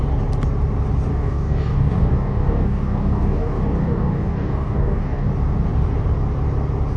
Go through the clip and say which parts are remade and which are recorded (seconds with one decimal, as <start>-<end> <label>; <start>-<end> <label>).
0.0-1.1 recorded; 1.1-5.3 remade; 5.3-7.0 recorded

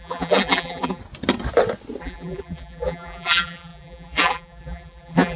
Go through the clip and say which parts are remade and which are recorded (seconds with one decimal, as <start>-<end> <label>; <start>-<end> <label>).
0.0-1.0 remade; 1.0-2.0 recorded; 2.0-5.4 remade

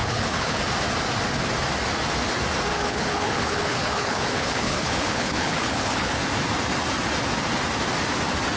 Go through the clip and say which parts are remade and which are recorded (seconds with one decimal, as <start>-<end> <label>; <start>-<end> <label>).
0.0-0.6 remade; 0.6-2.7 recorded; 2.7-6.1 remade; 6.1-8.6 recorded

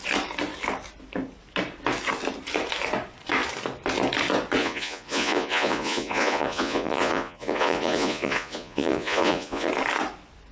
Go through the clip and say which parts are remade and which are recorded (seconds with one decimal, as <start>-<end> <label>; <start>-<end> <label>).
0.0-4.6 recorded; 4.6-9.7 remade; 9.7-10.5 recorded

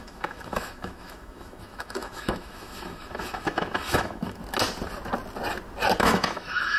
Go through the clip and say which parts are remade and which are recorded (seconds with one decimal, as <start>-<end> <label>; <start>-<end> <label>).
0.0-4.4 remade; 4.4-6.0 recorded; 6.0-6.8 remade

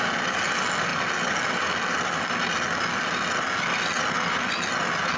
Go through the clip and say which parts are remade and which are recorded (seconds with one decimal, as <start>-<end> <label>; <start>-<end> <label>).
0.0-5.2 recorded

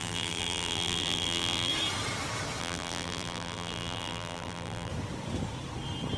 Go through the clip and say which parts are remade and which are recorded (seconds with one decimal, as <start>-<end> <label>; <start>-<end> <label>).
0.0-1.7 remade; 1.7-2.6 recorded; 2.6-4.9 remade; 4.9-6.2 recorded

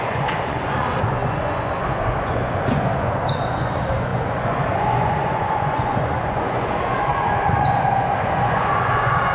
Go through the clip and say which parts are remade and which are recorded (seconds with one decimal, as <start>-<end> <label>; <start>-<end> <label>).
0.0-9.3 remade